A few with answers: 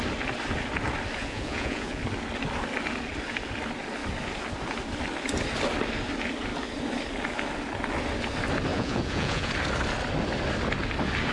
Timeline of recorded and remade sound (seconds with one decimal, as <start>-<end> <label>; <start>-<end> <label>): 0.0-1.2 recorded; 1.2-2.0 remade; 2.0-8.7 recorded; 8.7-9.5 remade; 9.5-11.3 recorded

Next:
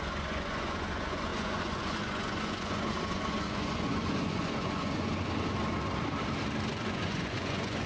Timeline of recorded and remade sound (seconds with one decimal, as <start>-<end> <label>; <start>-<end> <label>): 0.0-5.1 remade; 5.1-6.7 recorded; 6.7-7.9 remade

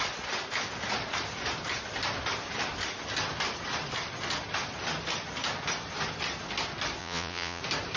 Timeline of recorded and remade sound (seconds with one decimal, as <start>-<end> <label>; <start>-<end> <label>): 0.0-7.0 recorded; 7.0-7.6 remade; 7.6-8.0 recorded